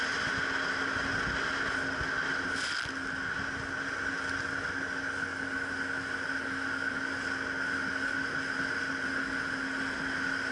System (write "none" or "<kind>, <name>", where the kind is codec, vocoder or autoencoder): none